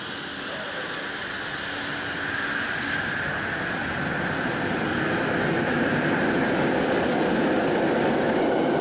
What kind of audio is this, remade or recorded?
recorded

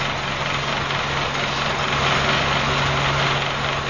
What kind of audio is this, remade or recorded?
recorded